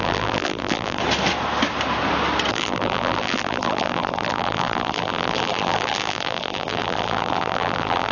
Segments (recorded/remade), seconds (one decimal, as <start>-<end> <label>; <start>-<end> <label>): 0.0-1.0 remade; 1.0-2.5 recorded; 2.5-8.1 remade